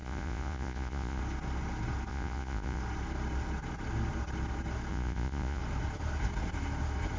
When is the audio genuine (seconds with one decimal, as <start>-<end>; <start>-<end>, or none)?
1.2-2.1; 2.8-4.9; 5.6-7.2